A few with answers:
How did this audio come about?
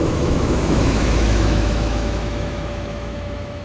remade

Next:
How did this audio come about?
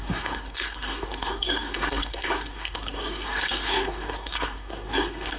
remade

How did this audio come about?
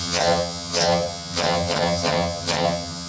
remade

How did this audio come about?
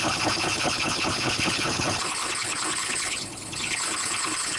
remade